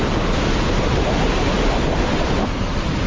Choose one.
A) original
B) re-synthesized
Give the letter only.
A